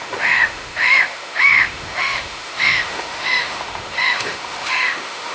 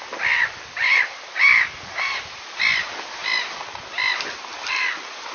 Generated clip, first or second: first